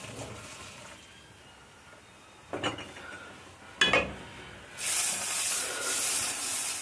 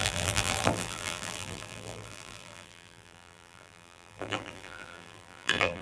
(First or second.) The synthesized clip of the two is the second